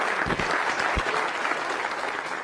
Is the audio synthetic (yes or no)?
no